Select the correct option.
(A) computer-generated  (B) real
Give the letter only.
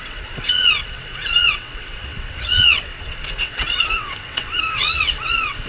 A